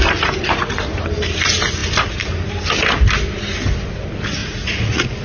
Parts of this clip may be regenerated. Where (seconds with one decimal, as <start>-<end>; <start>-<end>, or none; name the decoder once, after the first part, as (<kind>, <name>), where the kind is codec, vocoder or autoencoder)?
4.4-5.2 (vocoder, Vocos)